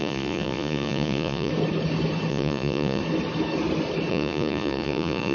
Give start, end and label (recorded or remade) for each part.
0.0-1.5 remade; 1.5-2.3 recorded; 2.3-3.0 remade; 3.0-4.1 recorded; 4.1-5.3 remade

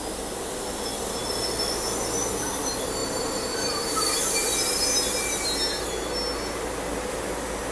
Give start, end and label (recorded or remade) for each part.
0.0-7.7 recorded